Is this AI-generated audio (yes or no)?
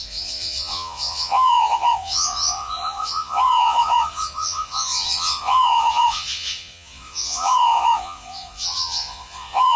yes